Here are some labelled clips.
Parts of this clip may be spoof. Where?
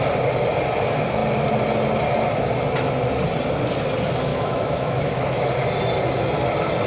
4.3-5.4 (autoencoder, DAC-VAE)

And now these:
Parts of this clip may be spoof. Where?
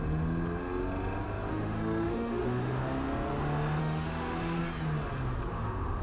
1.5-2.8 (autoencoder, DAC-VAE); 3.8-4.6; 5.5-6.0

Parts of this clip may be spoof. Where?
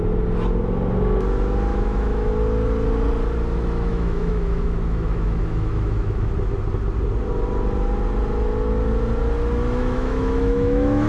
1.7-2.3 (autoencoder, DAC-VAE); 3.9-6.3; 9.8-11.1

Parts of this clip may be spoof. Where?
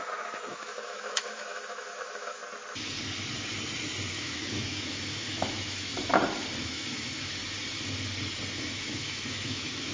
0.0-2.4 (autoencoder, DAC-VAE); 4.1-5.9; 6.6-7.4; 8.6-9.9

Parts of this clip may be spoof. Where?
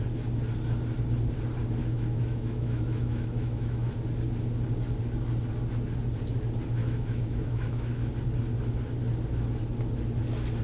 1.8-3.9 (autoencoder, DAC-VAE); 6.8-8.1